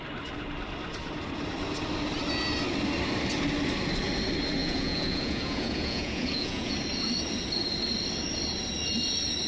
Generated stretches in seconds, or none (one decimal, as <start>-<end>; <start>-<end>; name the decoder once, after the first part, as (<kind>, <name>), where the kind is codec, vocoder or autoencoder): 4.6-6.7 (vocoder, Vocos)